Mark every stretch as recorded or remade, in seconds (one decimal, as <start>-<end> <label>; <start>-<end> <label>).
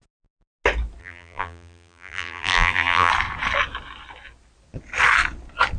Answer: 0.0-1.0 recorded; 1.0-3.1 remade; 3.1-5.8 recorded